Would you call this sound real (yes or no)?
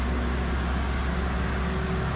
yes